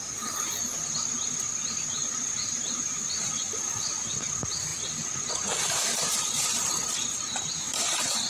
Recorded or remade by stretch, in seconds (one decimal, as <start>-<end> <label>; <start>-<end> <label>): 0.0-8.3 recorded